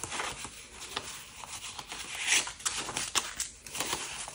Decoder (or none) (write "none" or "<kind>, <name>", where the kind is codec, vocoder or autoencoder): none